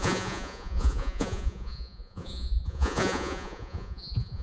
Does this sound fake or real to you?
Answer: fake